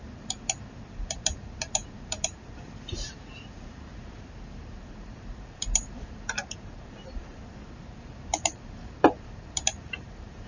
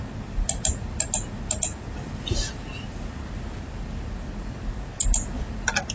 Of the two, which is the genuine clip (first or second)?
second